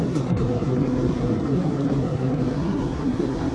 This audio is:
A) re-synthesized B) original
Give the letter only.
A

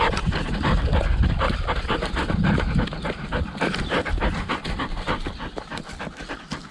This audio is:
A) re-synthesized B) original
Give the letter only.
B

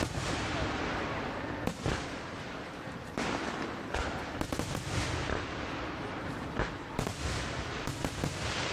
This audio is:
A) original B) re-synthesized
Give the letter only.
B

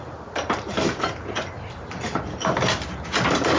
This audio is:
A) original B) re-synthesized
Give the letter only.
A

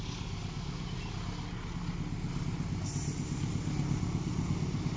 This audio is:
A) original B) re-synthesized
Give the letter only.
A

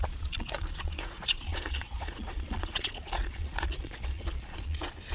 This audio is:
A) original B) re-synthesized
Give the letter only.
B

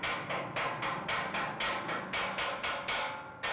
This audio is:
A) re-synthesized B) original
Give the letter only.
B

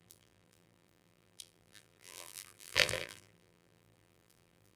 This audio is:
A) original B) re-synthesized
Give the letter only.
B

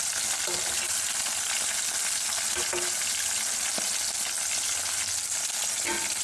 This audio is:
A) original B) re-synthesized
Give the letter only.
A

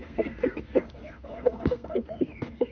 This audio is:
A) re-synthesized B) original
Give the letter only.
A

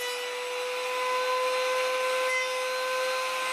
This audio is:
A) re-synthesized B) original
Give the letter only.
B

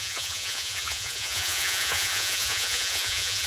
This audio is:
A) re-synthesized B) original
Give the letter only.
A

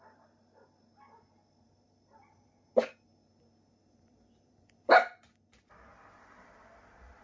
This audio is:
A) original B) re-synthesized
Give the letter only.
A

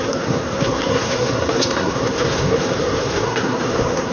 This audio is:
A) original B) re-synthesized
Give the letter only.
B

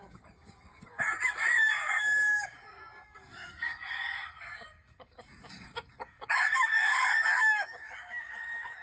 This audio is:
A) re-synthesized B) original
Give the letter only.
A